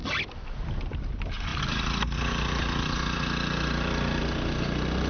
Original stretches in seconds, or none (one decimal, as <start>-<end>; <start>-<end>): 0.0-5.1